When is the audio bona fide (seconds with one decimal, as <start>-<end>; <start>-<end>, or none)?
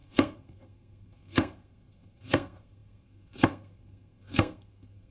none